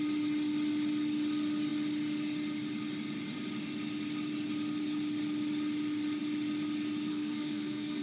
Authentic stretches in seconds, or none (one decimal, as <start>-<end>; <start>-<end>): 0.0-7.1